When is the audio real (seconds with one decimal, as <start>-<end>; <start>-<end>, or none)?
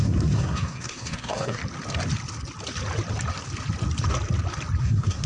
1.6-4.8